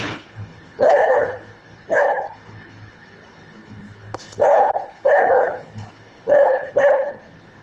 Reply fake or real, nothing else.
fake